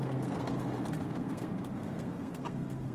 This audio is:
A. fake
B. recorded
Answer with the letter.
A